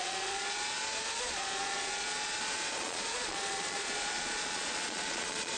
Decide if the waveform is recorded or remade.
remade